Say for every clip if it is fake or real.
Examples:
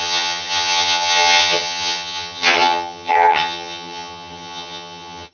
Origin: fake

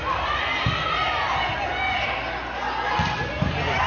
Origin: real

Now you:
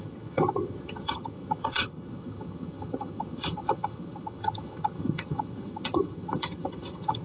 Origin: fake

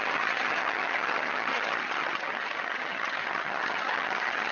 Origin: fake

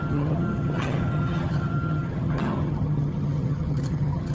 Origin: fake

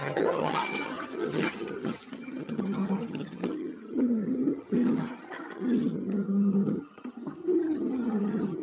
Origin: fake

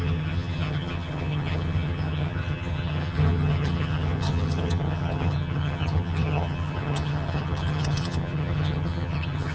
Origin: fake